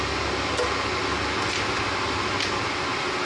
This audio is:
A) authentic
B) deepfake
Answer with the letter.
A